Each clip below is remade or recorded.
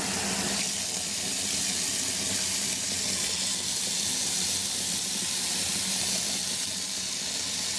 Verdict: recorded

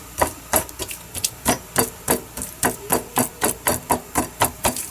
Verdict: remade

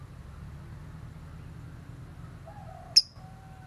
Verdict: recorded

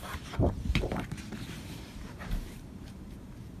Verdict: remade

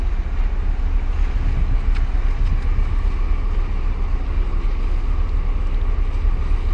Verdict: recorded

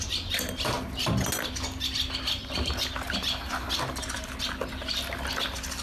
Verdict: recorded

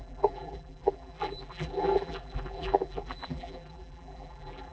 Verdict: remade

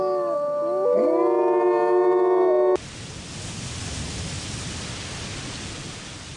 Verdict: recorded